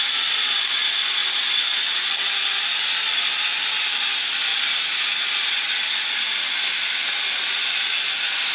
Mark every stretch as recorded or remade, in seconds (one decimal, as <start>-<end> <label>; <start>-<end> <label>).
0.0-8.5 recorded